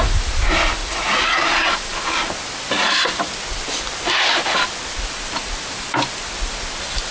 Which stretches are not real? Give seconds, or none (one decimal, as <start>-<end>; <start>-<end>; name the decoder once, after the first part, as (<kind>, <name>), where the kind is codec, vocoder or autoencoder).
0.8-1.4 (vocoder, Vocos)